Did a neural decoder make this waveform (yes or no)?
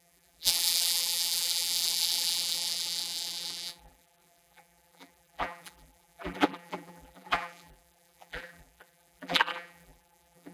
yes